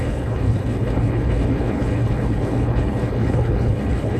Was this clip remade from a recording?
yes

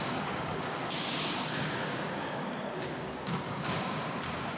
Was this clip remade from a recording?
yes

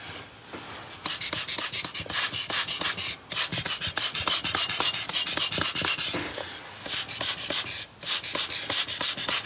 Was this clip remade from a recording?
no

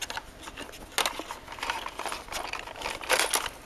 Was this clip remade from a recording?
no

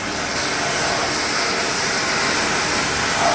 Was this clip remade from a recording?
no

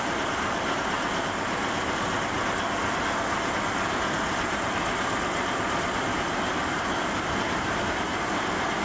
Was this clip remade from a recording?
no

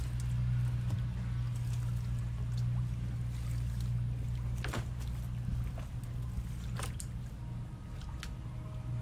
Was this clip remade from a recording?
no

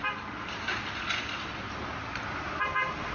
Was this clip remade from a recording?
no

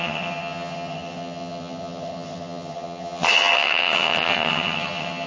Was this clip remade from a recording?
yes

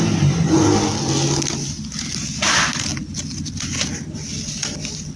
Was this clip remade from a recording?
no